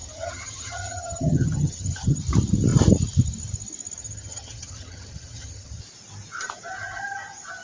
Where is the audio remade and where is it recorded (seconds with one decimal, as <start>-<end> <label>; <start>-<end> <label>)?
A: 0.0-2.2 remade; 2.2-4.0 recorded; 4.0-5.8 remade; 5.8-7.6 recorded